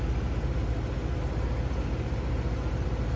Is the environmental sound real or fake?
real